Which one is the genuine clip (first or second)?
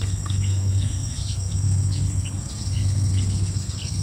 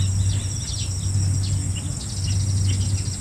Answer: second